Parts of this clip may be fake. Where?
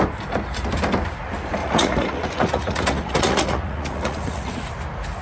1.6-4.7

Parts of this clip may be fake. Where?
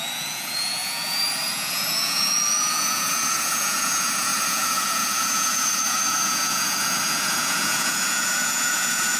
0.0-9.2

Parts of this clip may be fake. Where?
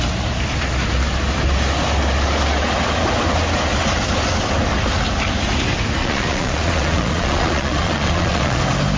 6.0-8.6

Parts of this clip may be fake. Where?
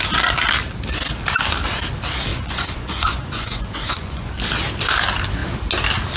2.3-4.3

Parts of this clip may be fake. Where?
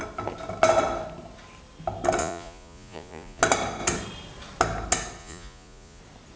2.2-3.4; 5.2-6.0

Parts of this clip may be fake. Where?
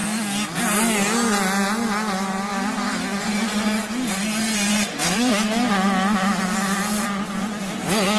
4.4-5.3